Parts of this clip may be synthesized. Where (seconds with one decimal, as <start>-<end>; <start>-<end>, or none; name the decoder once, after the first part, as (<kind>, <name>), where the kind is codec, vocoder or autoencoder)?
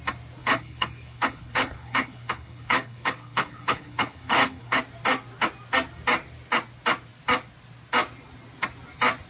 0.4-4.8 (codec, HILCodec)